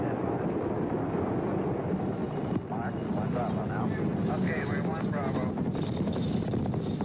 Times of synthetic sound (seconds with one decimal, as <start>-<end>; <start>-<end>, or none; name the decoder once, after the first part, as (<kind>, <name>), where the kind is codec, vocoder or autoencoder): none